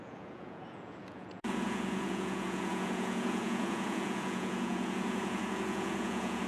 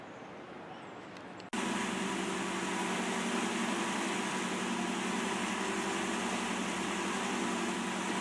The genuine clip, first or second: second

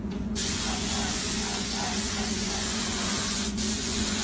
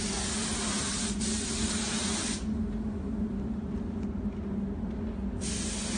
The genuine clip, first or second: second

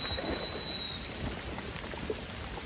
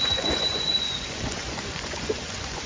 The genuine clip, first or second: first